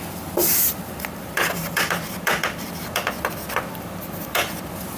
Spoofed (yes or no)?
yes